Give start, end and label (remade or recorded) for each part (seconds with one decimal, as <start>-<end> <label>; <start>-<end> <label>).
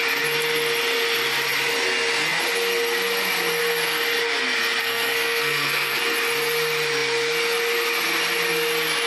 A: 0.0-4.8 recorded; 4.8-6.0 remade; 6.0-9.1 recorded